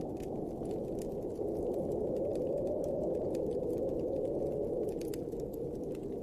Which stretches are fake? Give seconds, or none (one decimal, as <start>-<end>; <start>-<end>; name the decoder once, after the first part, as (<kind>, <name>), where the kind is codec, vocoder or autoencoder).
none